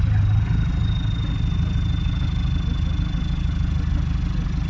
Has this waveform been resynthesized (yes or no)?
no